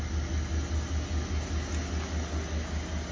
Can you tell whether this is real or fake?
real